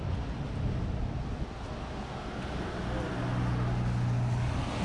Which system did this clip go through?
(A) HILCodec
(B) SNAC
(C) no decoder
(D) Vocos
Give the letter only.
C